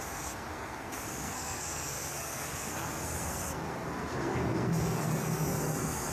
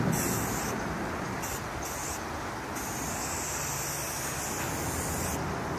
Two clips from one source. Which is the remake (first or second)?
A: first